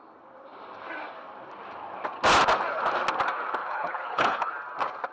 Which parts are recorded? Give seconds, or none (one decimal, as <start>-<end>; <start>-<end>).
0.0-3.6; 4.5-5.1